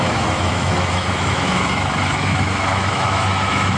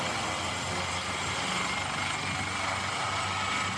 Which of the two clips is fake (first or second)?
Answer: first